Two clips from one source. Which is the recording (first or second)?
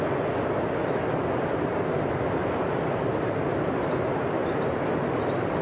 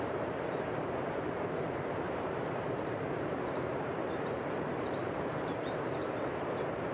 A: first